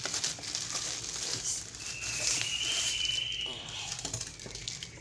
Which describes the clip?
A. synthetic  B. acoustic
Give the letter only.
A